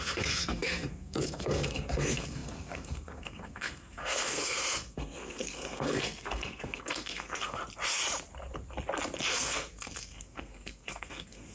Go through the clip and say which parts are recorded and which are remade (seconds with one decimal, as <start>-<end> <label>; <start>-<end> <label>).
0.0-7.6 remade; 7.6-9.3 recorded; 9.3-11.5 remade